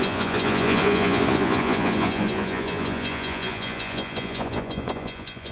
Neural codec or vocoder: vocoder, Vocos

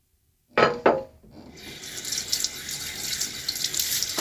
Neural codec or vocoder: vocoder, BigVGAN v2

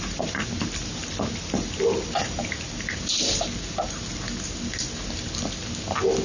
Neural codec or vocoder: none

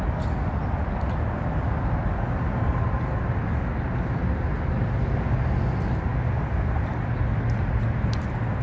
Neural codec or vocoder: none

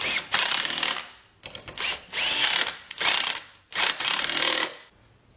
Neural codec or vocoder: none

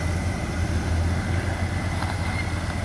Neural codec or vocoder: none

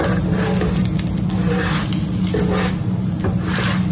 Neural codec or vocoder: none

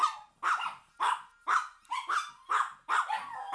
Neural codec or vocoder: none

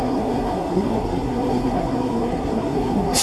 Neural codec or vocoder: codec, SNAC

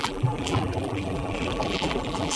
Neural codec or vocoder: vocoder, BigVGAN v2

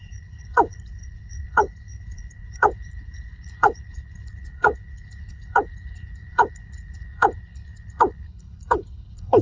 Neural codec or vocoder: codec, HILCodec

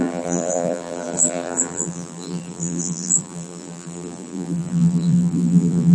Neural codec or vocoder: vocoder, BigVGAN v2